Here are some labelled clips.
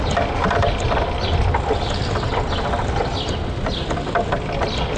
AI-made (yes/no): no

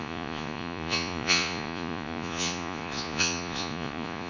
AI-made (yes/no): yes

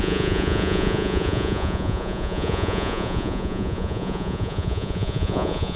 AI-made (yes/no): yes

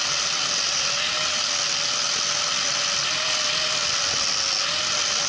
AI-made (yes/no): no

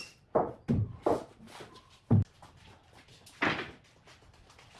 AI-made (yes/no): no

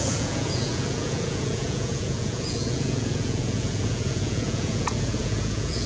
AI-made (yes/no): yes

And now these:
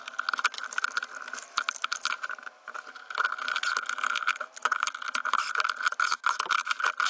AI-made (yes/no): no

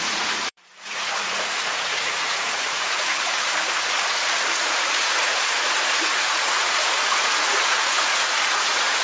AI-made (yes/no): yes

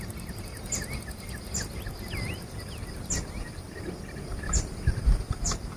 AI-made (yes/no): no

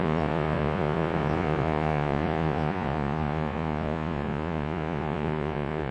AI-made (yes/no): yes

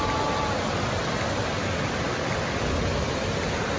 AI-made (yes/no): no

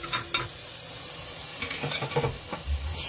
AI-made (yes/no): no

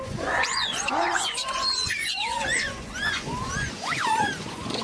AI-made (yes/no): yes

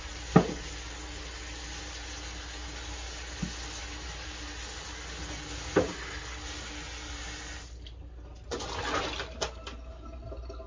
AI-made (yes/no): no